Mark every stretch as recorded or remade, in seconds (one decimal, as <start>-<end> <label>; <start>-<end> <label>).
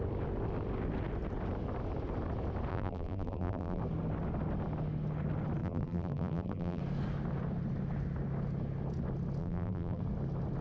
0.0-2.7 recorded; 2.7-3.8 remade; 3.8-5.6 recorded; 5.6-6.8 remade; 6.8-9.4 recorded; 9.4-10.0 remade; 10.0-10.6 recorded